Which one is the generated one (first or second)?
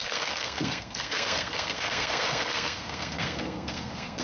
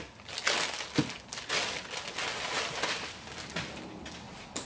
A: first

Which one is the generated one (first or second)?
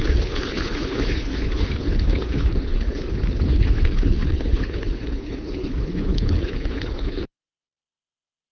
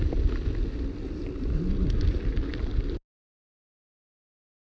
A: first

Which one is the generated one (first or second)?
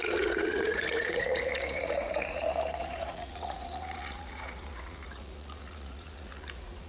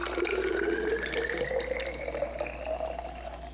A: first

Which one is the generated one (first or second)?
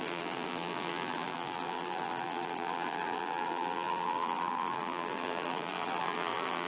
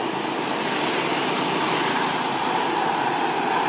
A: first